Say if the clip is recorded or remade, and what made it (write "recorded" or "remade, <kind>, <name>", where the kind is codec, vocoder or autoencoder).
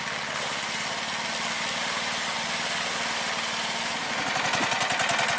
recorded